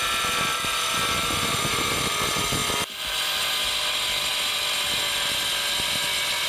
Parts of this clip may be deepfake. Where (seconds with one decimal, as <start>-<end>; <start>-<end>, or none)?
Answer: none

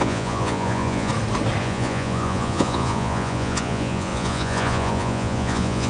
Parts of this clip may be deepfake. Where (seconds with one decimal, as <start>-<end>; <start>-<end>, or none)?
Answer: 0.0-1.1; 1.6-5.9

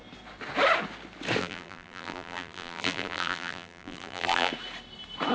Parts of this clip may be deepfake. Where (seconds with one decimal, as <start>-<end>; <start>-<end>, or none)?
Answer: 1.4-4.5

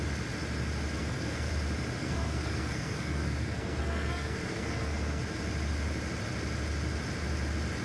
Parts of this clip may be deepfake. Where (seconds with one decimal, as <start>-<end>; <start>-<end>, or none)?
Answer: 1.0-1.5; 2.0-5.2

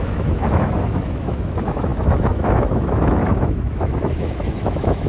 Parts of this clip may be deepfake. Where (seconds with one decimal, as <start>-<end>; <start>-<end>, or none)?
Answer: 0.0-5.1

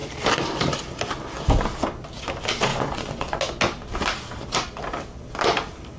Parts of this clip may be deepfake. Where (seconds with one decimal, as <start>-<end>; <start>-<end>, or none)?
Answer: 2.7-3.4

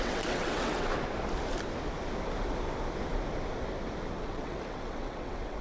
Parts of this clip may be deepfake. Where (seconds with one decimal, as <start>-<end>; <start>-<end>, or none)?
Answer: 0.0-0.9; 4.3-5.6